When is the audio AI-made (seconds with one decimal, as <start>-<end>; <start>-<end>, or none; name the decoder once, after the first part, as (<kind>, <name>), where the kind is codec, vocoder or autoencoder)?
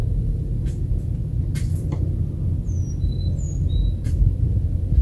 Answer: none